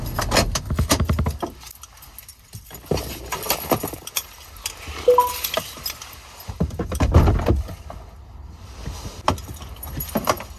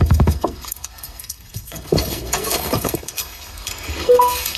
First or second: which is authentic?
first